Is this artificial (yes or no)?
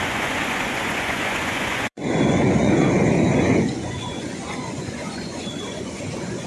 yes